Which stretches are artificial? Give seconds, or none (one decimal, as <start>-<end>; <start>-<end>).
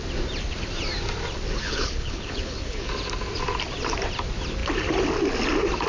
1.6-2.9